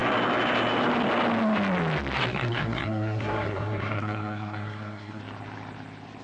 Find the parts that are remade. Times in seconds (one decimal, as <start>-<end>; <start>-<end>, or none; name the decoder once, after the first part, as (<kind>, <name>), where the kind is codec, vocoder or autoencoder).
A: 2.3-5.2 (codec, SNAC)